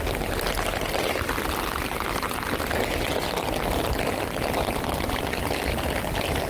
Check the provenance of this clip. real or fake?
real